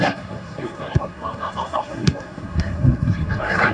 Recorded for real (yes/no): no